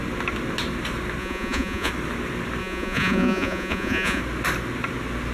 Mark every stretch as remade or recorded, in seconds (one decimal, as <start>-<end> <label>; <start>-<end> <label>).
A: 0.0-1.2 recorded; 1.2-1.9 remade; 1.9-2.6 recorded; 2.6-4.2 remade; 4.2-5.3 recorded